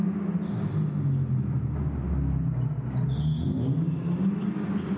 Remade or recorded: recorded